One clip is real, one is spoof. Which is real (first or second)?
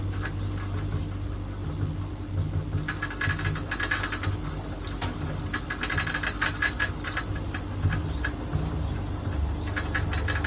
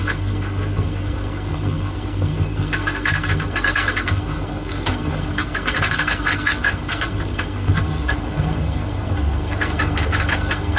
first